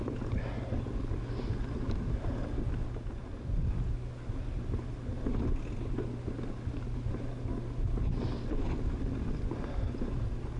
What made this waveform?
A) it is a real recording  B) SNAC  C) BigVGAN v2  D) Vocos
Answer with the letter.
A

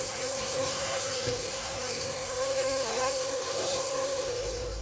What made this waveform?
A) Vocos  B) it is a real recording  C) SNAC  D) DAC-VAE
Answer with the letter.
C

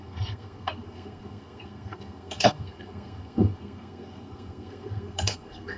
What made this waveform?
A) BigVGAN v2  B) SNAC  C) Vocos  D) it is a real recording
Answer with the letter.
B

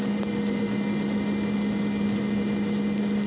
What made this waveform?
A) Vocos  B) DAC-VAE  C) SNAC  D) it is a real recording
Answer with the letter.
D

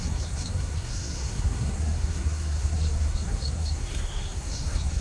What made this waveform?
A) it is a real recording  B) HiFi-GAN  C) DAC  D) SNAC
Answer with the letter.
D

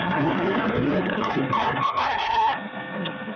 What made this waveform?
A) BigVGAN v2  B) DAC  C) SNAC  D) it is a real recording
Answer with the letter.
C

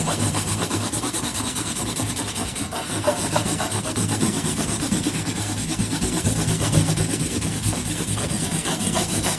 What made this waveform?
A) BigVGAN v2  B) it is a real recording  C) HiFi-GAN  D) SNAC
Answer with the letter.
D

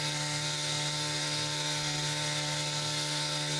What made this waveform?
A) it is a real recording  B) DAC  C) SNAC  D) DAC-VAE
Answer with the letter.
C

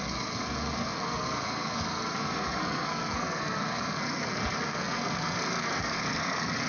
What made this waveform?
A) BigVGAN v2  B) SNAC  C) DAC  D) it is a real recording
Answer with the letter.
B